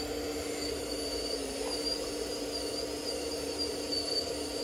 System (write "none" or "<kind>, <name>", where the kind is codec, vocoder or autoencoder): none